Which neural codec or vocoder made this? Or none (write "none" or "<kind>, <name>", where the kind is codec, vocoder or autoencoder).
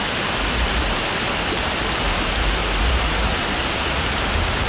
none